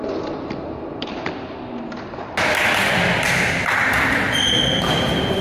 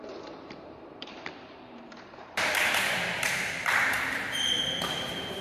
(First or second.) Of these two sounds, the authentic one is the first